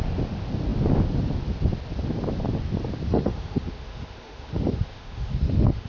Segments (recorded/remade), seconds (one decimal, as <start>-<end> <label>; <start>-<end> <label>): 0.0-3.1 recorded; 3.1-5.9 remade